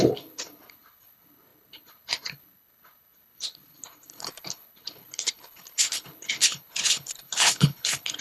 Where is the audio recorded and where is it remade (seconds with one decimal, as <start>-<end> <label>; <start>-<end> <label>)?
0.0-8.2 remade